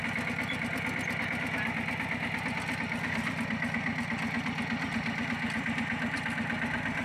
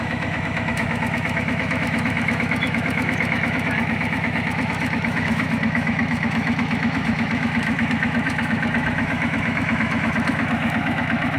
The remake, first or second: second